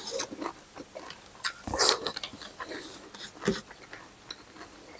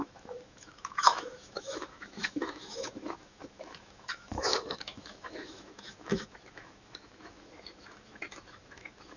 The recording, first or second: first